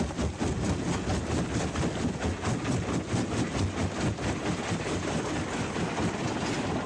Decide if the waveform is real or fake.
real